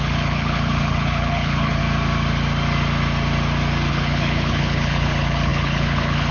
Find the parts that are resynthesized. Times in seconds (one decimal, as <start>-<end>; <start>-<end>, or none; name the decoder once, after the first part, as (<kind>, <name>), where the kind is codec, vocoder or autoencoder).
0.0-1.8 (codec, HILCodec); 3.9-6.3